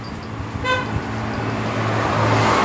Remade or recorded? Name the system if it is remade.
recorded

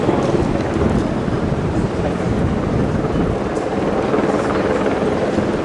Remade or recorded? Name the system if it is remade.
recorded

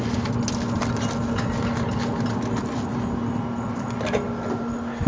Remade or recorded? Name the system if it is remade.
recorded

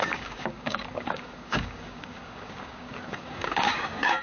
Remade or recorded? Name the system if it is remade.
remade, codec, DAC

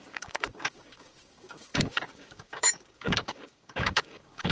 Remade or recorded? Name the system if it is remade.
remade, codec, DAC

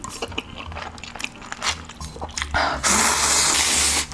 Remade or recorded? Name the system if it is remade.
recorded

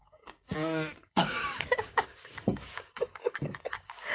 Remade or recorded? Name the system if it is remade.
remade, codec, DAC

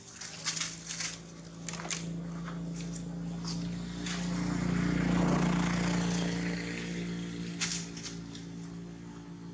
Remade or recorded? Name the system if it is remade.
recorded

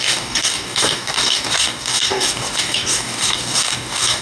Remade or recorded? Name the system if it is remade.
remade, codec, DAC